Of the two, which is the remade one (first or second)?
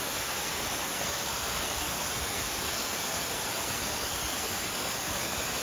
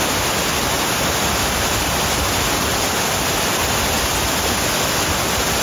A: first